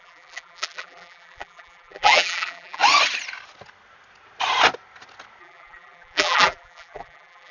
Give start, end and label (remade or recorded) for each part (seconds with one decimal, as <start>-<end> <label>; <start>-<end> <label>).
0.0-2.8 remade; 2.8-5.4 recorded; 5.4-7.5 remade